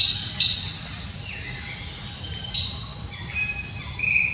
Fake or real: real